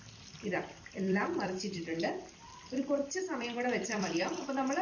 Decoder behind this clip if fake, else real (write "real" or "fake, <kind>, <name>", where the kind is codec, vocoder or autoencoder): fake, vocoder, BigVGAN v2